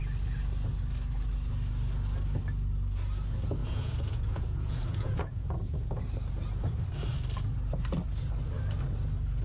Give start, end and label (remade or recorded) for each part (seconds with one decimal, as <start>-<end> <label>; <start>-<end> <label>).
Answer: 0.0-3.6 recorded; 3.6-6.0 remade; 6.0-9.4 recorded